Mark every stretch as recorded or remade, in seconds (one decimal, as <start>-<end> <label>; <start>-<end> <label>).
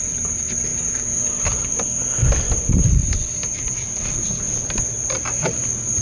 0.0-6.0 recorded